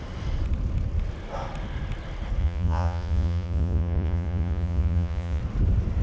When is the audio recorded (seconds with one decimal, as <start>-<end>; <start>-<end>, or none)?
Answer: 0.0-2.4; 5.4-6.0